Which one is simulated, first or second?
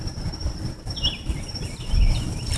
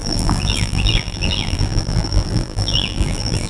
second